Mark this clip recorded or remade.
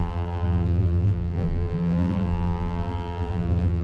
remade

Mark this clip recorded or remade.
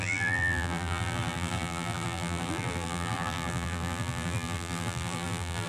remade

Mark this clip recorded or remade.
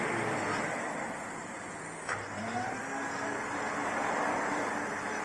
recorded